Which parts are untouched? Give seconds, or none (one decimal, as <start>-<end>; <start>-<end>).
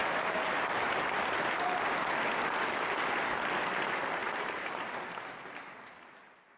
0.9-4.2; 4.7-6.6